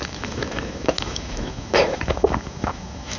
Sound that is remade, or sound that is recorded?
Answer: remade